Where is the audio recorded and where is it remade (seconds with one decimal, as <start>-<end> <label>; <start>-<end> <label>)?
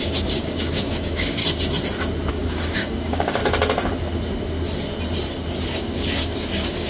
0.0-1.4 remade; 1.4-2.3 recorded; 2.3-3.4 remade; 3.4-5.8 recorded; 5.8-6.9 remade